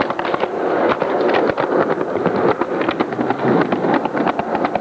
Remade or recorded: recorded